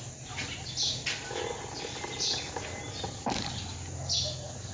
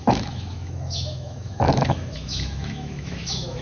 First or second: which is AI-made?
second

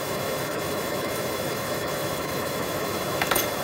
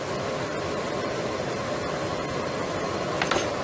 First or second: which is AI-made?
first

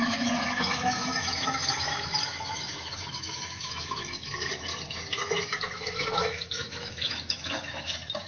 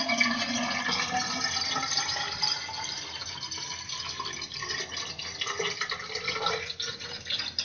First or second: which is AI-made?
first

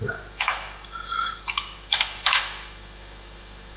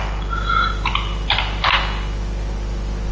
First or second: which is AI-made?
first